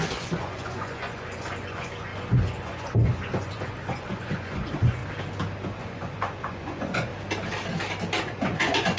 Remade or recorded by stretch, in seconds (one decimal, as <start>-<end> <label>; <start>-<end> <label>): 0.0-5.0 remade; 5.0-5.8 recorded; 5.8-7.1 remade; 7.1-8.2 recorded; 8.2-9.0 remade